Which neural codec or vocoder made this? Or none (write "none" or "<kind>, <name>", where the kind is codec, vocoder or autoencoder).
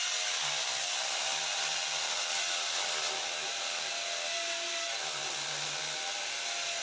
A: none